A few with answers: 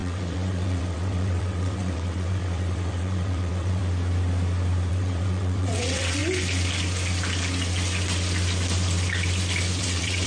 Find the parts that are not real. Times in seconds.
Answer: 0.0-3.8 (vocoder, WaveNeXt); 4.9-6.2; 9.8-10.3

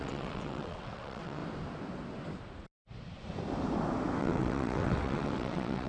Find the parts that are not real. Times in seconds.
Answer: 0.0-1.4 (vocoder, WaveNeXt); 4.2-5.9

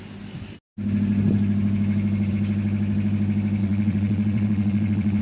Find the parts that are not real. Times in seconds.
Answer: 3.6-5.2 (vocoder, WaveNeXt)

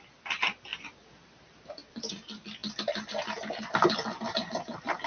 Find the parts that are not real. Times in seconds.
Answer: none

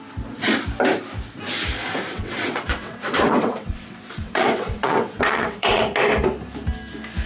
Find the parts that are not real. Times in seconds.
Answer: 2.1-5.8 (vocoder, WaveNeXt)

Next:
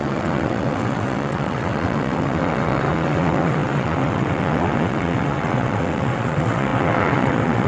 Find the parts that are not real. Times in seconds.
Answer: 0.0-7.7 (vocoder, WaveNeXt)

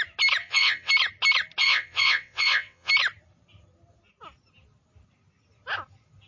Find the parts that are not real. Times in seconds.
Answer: 0.4-0.9 (vocoder, WaveNeXt); 1.6-2.9